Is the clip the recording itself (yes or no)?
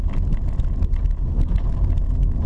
yes